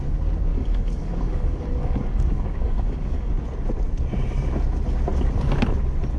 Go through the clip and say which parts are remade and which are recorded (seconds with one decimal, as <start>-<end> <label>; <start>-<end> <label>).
0.0-0.5 recorded; 0.5-3.3 remade; 3.3-6.2 recorded